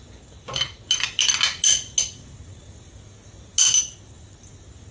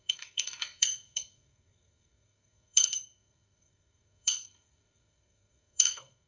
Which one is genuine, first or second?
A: first